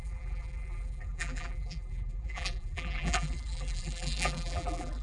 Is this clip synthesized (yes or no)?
yes